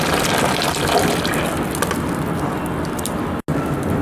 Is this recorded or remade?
recorded